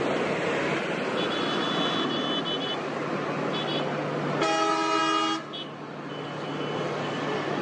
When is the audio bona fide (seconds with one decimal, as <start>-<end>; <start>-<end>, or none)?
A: 0.0-7.6